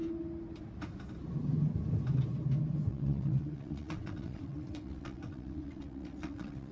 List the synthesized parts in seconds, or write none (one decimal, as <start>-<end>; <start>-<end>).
2.9-6.7